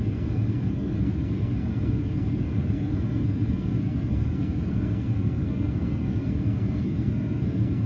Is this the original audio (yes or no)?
no